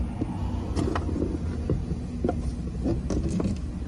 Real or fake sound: real